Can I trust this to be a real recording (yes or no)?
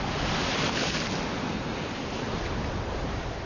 yes